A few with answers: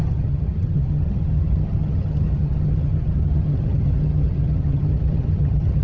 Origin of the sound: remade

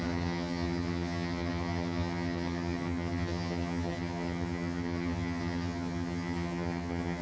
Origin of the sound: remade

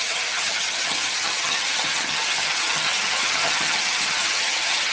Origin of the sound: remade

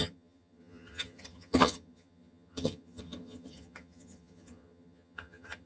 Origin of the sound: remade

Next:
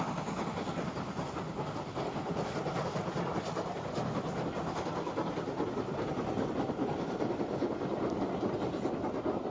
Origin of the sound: recorded